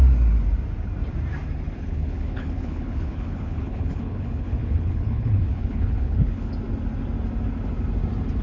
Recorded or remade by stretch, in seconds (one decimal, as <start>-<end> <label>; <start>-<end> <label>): 0.0-1.9 recorded; 1.9-6.5 remade; 6.5-8.4 recorded